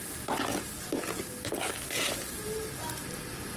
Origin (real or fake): real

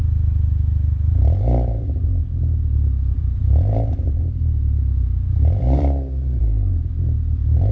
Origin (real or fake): fake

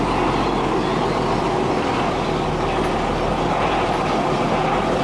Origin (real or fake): real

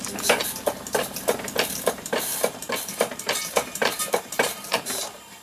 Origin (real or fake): fake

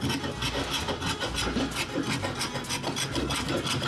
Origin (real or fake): real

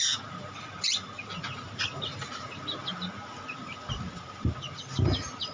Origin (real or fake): real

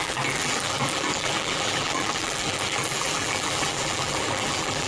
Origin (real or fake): fake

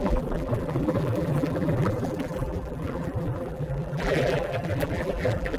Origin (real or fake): fake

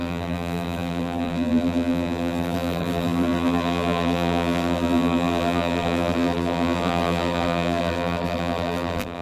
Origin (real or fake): fake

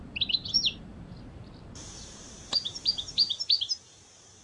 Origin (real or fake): fake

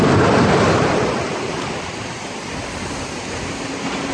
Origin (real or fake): fake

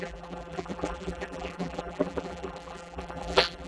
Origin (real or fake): fake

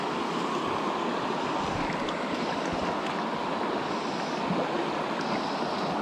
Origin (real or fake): real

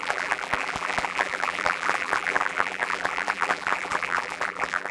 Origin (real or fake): fake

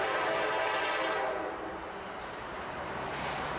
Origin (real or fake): fake